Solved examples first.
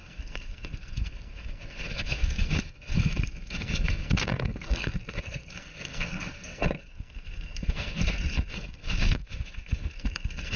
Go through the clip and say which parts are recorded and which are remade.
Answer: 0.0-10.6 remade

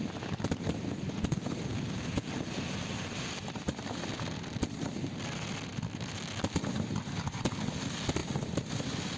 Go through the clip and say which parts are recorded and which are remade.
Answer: 0.0-4.6 remade; 4.6-5.7 recorded; 5.7-6.3 remade; 6.3-8.2 recorded; 8.2-9.2 remade

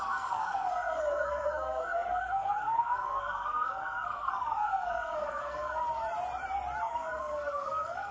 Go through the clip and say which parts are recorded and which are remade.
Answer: 0.0-5.8 remade; 5.8-6.8 recorded; 6.8-8.1 remade

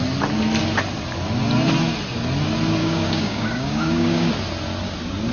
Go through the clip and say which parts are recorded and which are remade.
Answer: 0.0-2.8 recorded; 2.8-4.3 remade; 4.3-5.3 recorded

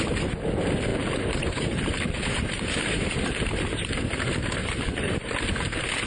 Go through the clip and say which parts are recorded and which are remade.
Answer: 0.0-0.9 recorded; 0.9-3.2 remade; 3.2-4.6 recorded; 4.6-5.3 remade; 5.3-6.1 recorded

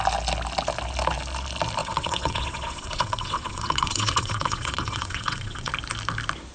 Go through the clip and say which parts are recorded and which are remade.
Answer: 0.0-1.8 recorded; 1.8-5.7 remade; 5.7-6.5 recorded

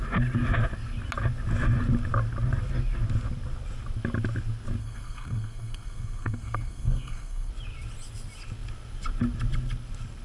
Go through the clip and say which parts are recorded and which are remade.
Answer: 0.0-4.8 recorded; 4.8-7.5 remade; 7.5-10.2 recorded

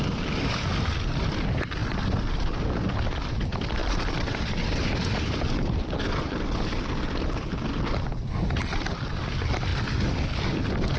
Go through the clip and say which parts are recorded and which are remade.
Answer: 0.0-3.8 recorded; 3.8-8.6 remade; 8.6-11.0 recorded